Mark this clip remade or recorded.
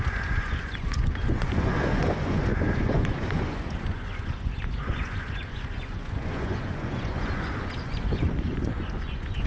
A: remade